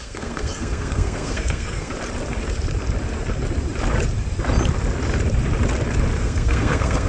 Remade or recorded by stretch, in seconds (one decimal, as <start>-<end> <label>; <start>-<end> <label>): 0.0-1.9 remade; 1.9-6.2 recorded; 6.2-7.1 remade